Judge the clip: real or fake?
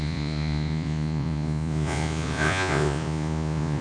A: fake